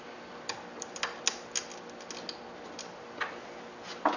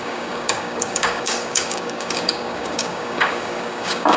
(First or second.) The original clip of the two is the first